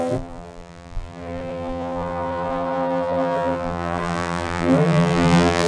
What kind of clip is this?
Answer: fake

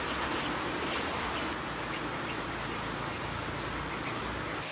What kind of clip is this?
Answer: real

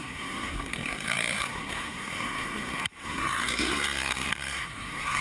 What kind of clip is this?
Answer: fake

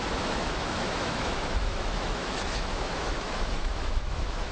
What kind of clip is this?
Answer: fake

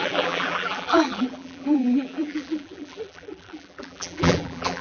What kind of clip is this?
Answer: fake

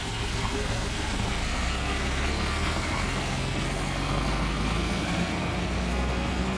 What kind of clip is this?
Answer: fake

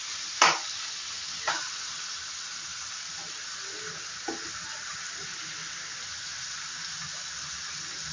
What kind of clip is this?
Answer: real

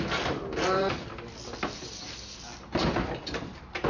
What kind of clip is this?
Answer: fake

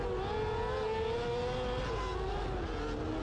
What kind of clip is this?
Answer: real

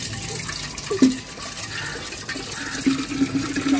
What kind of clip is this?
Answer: real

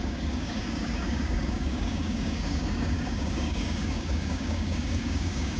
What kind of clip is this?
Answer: fake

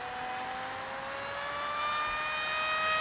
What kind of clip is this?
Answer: real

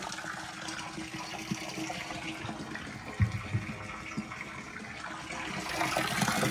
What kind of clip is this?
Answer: real